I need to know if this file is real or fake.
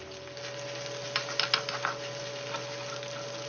real